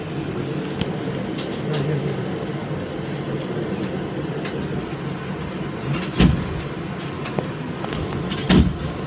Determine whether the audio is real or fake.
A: real